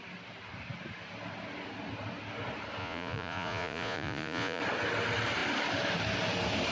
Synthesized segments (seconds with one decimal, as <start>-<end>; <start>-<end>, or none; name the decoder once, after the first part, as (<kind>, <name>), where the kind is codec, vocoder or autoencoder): 2.8-4.6 (vocoder, Vocos)